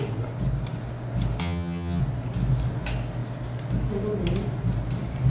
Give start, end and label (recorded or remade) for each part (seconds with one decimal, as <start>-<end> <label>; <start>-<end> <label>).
0.0-1.4 recorded; 1.4-2.0 remade; 2.0-5.3 recorded